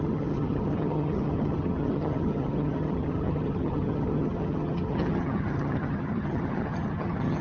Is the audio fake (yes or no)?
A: yes